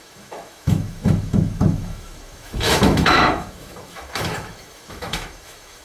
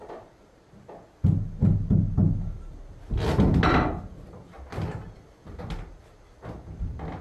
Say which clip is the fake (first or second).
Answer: first